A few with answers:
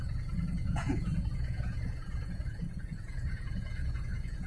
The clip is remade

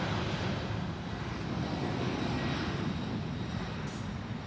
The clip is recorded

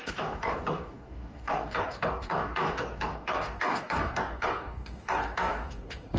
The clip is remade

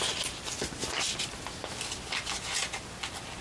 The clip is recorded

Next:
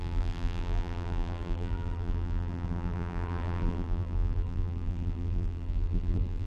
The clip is remade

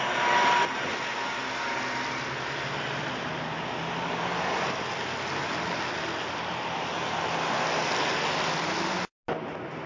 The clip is recorded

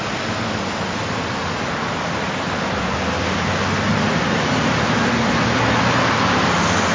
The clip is recorded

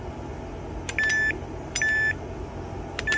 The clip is recorded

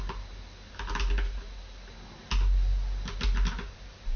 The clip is recorded